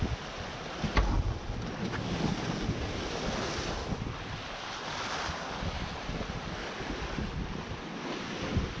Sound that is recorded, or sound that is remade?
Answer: recorded